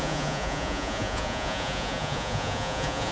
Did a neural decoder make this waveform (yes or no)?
yes